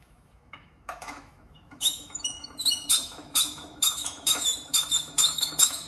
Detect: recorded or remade remade